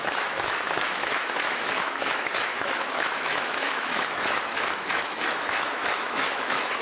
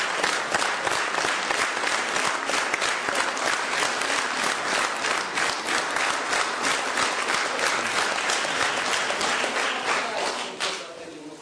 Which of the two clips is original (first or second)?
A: second